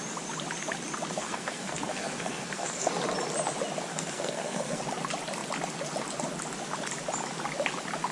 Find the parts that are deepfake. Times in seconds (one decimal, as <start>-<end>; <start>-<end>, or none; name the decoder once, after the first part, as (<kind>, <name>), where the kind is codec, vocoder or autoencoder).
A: 1.1-2.9 (codec, SNAC); 3.9-4.8